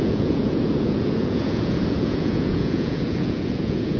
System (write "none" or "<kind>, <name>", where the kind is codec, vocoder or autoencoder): vocoder, Vocos